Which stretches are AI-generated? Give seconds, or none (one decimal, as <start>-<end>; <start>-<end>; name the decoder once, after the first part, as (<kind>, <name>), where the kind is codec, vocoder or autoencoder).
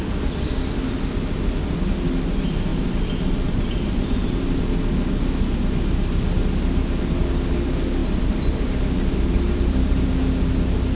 2.7-4.6 (vocoder, BigVGAN v2); 8.0-10.1